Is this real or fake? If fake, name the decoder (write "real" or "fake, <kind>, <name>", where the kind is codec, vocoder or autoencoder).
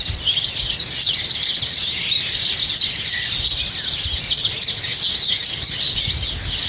real